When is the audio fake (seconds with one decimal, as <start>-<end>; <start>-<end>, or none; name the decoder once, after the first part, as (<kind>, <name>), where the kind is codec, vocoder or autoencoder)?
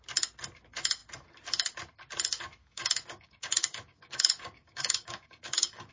2.6-5.9 (codec, DAC)